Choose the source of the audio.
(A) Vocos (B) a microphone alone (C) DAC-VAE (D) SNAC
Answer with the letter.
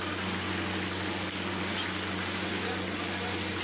B